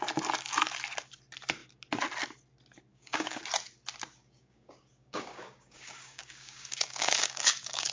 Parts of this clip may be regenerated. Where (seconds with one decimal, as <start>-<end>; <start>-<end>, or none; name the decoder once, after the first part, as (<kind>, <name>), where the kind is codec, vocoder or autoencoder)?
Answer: 2.9-3.4 (codec, DAC); 4.2-7.9